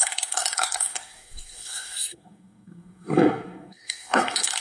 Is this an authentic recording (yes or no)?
no